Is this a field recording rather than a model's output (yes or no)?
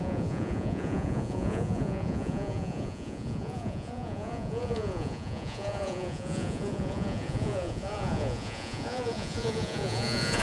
no